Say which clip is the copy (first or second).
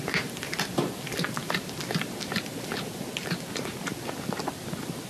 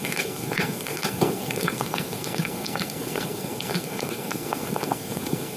second